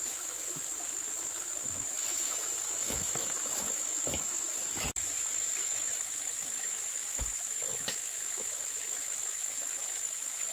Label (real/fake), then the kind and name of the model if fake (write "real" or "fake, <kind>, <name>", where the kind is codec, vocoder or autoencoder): fake, autoencoder, DAC-VAE